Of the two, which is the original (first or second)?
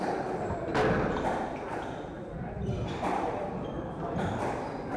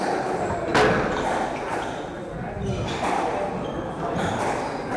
second